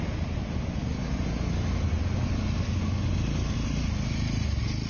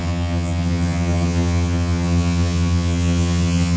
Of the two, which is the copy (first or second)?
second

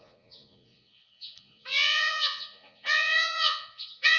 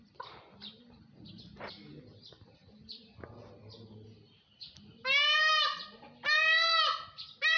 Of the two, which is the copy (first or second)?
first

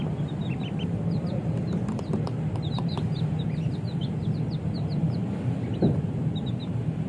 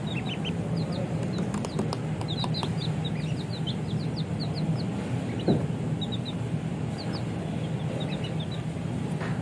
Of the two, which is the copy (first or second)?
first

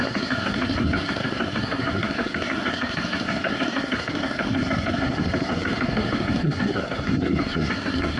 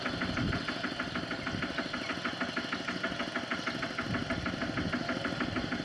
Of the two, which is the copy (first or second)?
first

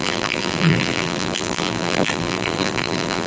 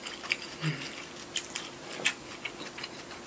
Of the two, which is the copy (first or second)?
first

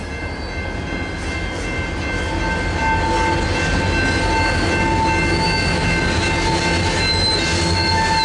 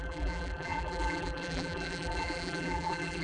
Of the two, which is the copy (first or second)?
second